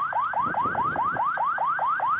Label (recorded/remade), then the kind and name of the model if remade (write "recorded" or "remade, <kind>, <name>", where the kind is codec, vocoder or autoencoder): recorded